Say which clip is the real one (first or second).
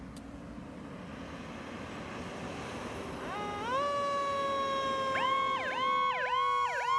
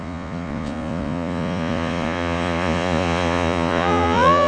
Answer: first